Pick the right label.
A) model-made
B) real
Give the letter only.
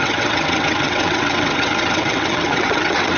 A